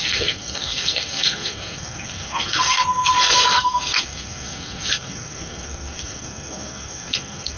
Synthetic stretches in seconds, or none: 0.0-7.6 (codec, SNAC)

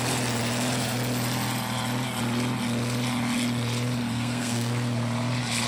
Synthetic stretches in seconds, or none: 4.1-4.7 (codec, SNAC)

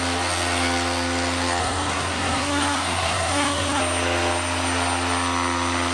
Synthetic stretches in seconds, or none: 1.6-3.8 (codec, SNAC)

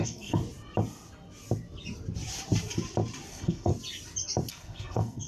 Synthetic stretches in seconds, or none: 0.0-0.4 (codec, SNAC); 3.3-3.7; 4.5-5.3

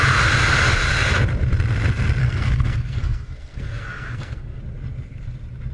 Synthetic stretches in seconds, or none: 2.2-4.6 (codec, SNAC)